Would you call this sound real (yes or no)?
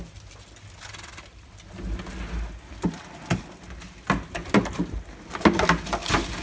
yes